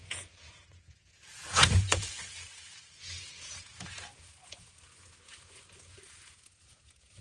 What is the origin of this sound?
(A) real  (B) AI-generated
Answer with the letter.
B